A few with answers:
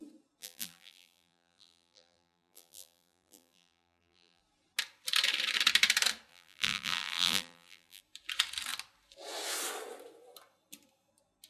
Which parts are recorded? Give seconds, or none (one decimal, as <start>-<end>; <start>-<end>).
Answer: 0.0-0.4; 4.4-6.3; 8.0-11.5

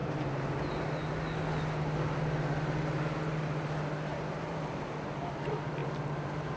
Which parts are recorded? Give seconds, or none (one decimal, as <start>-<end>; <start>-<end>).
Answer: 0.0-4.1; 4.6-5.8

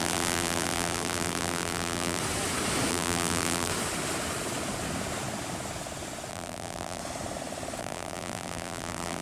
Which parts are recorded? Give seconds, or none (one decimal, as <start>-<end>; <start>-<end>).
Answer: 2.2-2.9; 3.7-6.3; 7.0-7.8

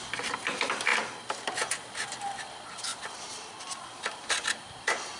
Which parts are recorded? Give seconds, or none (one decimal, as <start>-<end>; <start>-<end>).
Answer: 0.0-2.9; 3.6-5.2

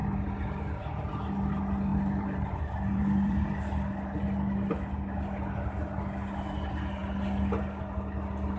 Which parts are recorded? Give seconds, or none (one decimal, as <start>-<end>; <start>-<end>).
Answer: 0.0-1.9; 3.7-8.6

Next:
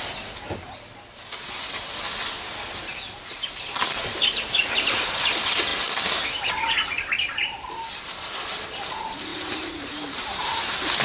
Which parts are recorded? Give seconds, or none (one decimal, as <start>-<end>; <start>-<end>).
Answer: 0.0-2.9; 3.6-9.3; 10.6-11.0

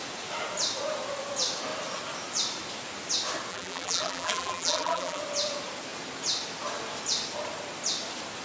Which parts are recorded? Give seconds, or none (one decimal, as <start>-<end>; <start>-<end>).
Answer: 0.0-3.5; 5.2-8.4